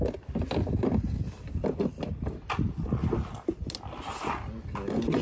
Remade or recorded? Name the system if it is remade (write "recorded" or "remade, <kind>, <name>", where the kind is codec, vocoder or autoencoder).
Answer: recorded